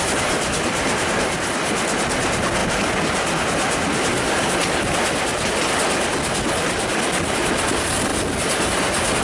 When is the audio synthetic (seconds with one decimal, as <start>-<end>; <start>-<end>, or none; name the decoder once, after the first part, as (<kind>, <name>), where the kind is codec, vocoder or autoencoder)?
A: none